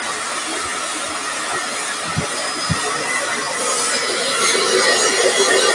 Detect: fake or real real